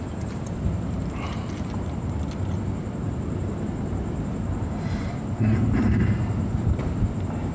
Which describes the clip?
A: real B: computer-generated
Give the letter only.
B